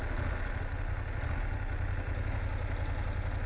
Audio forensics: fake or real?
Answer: real